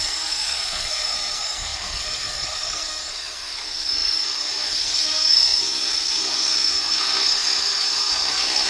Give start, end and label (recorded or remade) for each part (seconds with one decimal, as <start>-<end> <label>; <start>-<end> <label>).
0.0-8.7 remade